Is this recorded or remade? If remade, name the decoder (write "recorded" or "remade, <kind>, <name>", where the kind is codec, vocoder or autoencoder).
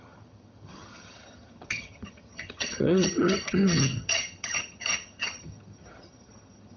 remade, vocoder, HiFi-GAN